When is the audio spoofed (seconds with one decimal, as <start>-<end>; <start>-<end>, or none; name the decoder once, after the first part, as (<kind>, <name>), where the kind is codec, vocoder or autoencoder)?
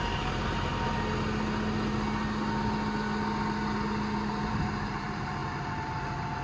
0.0-0.7 (vocoder, BigVGAN v2); 4.5-6.4